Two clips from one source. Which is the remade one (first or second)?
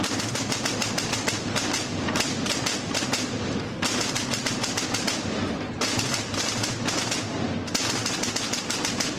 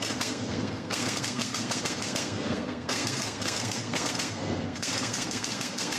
second